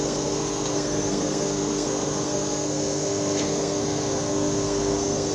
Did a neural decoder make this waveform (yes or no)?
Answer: yes